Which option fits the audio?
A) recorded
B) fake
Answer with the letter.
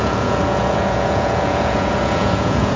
B